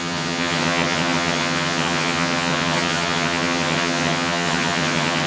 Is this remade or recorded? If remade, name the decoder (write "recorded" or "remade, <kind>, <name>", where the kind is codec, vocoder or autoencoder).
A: remade, vocoder, HiFi-GAN